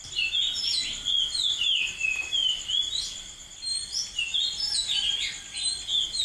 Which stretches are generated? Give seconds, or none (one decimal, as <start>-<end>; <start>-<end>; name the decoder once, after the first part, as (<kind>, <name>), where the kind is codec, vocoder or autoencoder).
none

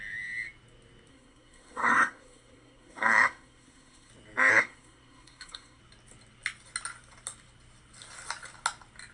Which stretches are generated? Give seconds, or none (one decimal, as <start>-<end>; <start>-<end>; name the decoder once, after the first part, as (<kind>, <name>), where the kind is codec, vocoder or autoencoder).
1.1-4.1 (codec, SNAC); 4.5-5.8

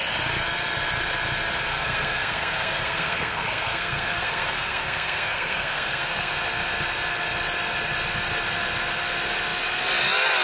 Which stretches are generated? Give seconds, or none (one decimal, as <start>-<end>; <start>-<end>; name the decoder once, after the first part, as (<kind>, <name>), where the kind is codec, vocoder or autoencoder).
1.7-6.3 (codec, SNAC)